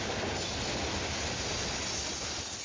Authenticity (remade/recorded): recorded